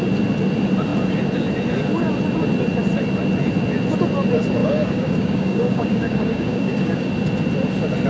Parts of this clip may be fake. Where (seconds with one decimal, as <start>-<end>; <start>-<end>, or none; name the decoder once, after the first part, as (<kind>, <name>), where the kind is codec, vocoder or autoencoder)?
4.6-7.1 (codec, DAC)